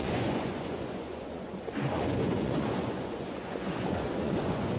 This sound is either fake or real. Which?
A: fake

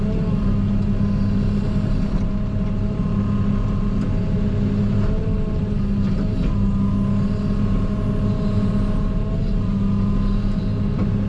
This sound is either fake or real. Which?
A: real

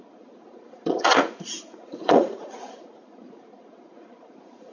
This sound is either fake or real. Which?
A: fake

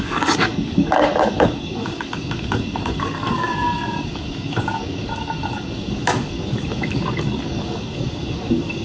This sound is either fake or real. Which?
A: fake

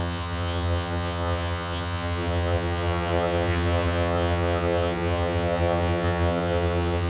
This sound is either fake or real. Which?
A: fake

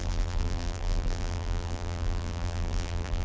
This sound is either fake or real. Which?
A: fake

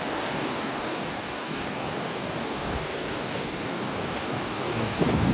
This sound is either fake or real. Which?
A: fake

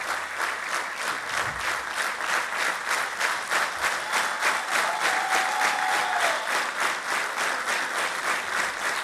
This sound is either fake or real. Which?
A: real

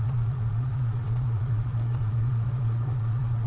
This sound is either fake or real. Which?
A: fake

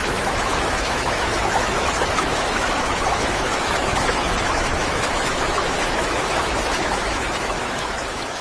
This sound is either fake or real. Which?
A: fake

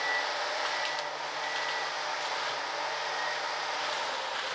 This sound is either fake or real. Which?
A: real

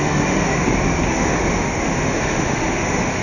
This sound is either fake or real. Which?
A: fake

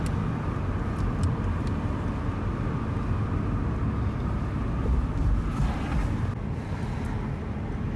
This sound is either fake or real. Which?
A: real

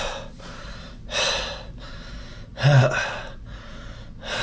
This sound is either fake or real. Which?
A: real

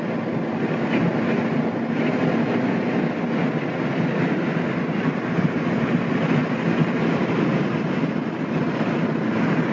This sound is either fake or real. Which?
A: real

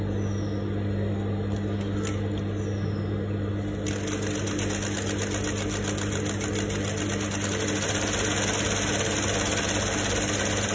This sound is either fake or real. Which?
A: real